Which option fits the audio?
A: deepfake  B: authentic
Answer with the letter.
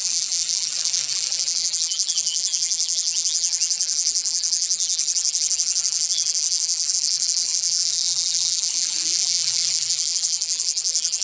A